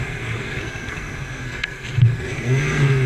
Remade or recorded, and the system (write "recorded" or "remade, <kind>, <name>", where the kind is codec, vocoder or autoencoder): remade, codec, SNAC